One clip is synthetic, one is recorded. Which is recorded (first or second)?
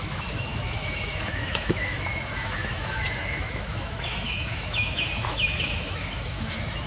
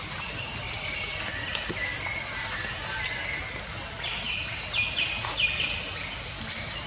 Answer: second